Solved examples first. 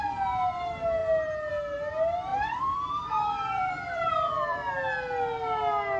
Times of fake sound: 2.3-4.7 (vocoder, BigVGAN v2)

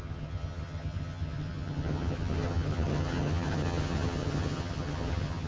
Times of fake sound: 0.0-5.5 (vocoder, HiFi-GAN)

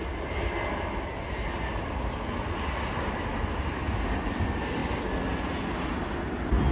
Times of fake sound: none

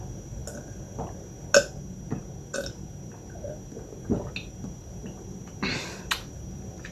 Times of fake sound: none